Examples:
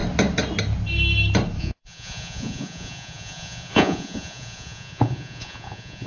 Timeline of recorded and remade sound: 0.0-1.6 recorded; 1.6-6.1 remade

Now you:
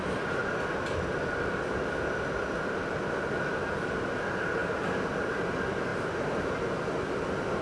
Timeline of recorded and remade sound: 0.0-7.6 recorded

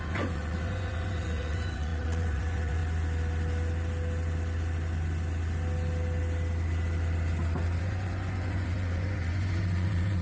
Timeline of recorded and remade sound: 0.0-2.8 remade; 2.8-7.8 recorded; 7.8-10.2 remade

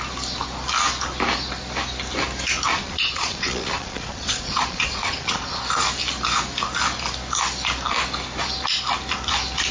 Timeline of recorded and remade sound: 0.0-2.7 recorded; 2.7-5.6 remade; 5.6-9.7 recorded

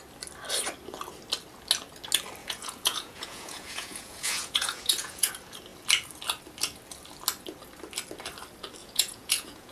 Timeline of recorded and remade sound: 0.0-2.4 recorded; 2.4-5.3 remade; 5.3-8.8 recorded; 8.8-9.7 remade

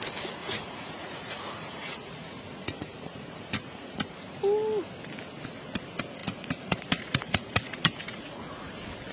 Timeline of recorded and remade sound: 0.0-0.4 recorded; 0.4-4.4 remade; 4.4-6.2 recorded; 6.2-8.7 remade; 8.7-9.1 recorded

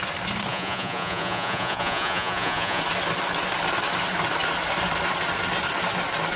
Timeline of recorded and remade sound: 0.0-0.5 recorded; 0.5-2.8 remade; 2.8-6.4 recorded